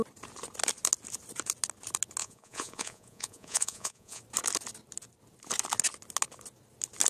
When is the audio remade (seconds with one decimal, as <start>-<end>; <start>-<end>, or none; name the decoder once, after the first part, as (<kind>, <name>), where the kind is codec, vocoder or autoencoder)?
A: 2.2-4.2 (vocoder, Vocos)